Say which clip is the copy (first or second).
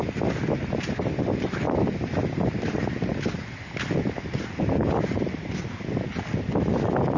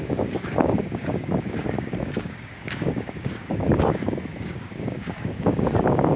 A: second